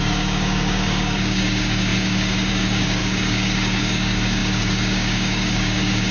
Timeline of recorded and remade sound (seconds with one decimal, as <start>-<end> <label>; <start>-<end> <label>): 0.0-6.1 remade